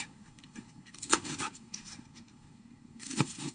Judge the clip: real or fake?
fake